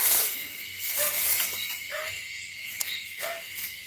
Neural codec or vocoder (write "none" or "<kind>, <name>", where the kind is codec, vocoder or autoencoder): codec, SNAC